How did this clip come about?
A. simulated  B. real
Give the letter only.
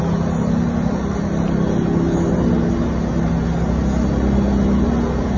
B